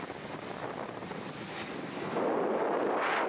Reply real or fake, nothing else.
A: real